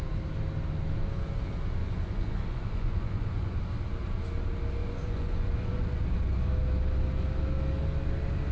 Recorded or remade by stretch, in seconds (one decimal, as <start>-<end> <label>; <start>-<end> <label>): 0.0-1.8 recorded; 1.8-3.6 remade; 3.6-4.8 recorded; 4.8-6.0 remade; 6.0-8.5 recorded